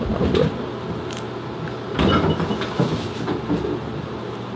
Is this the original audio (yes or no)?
yes